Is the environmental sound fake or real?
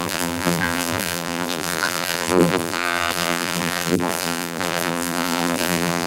fake